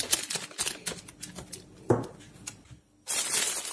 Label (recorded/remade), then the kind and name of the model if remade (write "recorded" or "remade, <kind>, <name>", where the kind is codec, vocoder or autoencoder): recorded